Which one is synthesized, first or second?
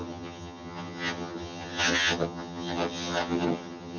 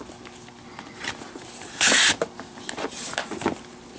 first